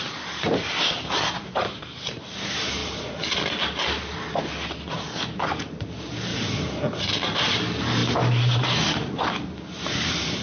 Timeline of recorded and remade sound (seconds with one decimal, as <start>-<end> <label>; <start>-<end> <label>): 0.0-2.8 remade; 2.8-4.9 recorded; 4.9-10.4 remade